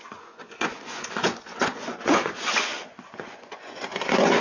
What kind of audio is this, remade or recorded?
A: remade